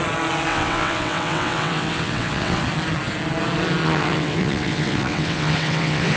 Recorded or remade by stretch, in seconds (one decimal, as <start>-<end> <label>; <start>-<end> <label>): 0.0-0.5 recorded; 0.5-2.6 remade; 2.6-3.8 recorded; 3.8-6.2 remade